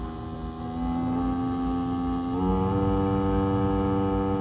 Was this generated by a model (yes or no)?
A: no